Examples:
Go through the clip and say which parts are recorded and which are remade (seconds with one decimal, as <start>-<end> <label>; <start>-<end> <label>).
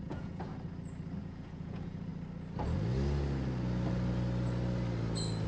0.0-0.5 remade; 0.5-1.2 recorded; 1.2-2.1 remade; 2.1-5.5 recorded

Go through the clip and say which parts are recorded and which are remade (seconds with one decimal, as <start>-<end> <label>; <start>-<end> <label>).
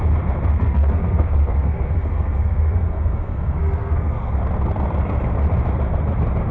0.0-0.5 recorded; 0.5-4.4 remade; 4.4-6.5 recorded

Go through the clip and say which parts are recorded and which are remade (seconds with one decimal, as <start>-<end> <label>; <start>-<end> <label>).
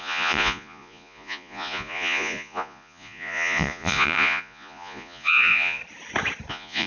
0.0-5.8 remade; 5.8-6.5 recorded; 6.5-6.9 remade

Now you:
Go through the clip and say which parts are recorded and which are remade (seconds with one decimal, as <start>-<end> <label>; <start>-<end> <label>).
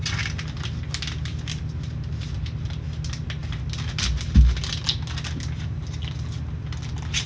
0.0-7.3 recorded